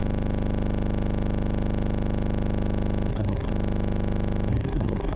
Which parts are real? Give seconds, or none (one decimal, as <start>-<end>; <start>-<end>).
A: 0.0-3.1; 3.5-4.5